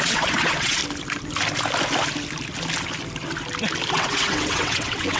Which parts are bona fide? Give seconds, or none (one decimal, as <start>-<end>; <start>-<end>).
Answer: 0.8-3.9